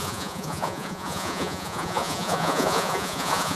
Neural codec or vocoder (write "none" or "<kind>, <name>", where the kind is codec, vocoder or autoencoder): vocoder, Vocos